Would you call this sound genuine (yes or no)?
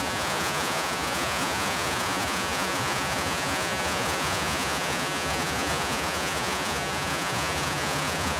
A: no